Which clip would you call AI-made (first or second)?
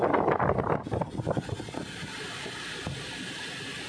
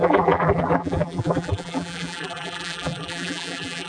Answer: second